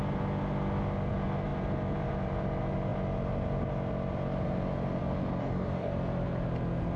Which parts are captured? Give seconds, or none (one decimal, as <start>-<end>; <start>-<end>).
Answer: 0.0-5.4; 5.9-7.0